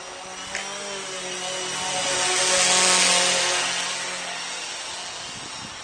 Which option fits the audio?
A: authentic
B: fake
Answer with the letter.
A